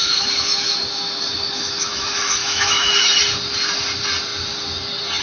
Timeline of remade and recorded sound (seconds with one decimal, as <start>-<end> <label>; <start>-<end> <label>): 0.0-3.1 remade; 3.1-5.2 recorded